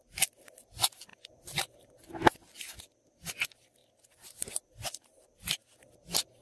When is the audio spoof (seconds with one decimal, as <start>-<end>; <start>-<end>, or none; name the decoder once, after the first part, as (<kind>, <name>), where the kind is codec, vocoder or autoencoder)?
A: 1.1-1.9 (vocoder, BigVGAN v2); 3.8-4.7

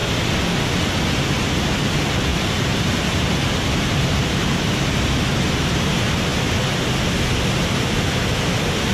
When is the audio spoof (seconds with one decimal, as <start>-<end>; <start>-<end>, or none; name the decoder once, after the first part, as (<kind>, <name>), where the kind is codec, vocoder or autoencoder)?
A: 2.3-4.8 (vocoder, BigVGAN v2)

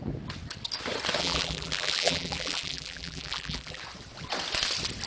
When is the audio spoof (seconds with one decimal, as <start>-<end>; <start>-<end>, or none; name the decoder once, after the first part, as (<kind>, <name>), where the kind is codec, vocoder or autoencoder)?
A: 1.2-3.8 (vocoder, BigVGAN v2)

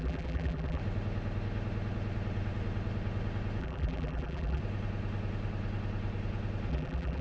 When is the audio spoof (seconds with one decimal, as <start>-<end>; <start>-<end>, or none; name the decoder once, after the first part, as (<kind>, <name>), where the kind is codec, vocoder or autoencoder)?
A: 0.0-0.8 (vocoder, BigVGAN v2); 3.6-4.6; 6.7-7.2

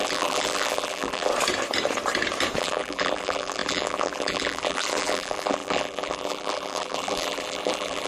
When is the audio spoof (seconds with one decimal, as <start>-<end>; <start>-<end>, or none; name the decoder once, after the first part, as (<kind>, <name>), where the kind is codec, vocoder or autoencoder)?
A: 0.0-1.3 (vocoder, BigVGAN v2); 2.6-8.1

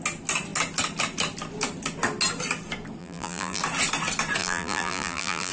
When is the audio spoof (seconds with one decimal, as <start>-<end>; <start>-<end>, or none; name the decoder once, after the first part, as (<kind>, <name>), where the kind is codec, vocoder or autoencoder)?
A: 3.0-3.6 (vocoder, BigVGAN v2); 4.4-5.5